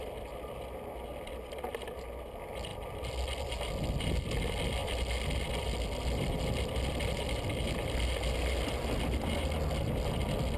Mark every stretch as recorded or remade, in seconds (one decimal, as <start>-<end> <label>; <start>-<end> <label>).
0.0-10.6 recorded